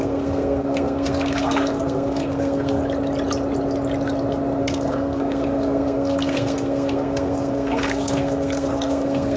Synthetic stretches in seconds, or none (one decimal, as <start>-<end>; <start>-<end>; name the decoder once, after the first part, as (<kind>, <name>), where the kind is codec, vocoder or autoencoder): 0.0-2.8 (codec, SNAC); 4.6-9.4